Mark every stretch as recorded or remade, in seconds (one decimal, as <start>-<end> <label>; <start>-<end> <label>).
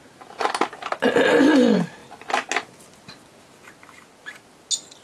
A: 0.0-5.0 recorded